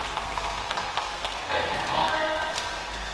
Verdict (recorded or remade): remade